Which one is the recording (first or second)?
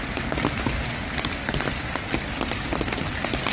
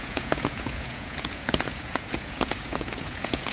first